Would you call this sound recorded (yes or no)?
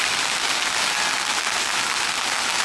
yes